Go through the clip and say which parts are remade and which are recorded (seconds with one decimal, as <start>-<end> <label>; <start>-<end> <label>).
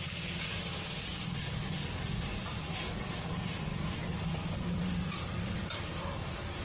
0.0-2.3 recorded; 2.3-3.0 remade; 3.0-3.7 recorded; 3.7-6.0 remade; 6.0-6.6 recorded